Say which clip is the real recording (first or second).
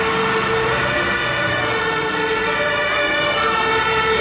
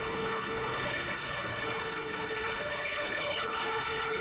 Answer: first